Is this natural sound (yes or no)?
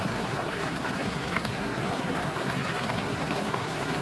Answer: no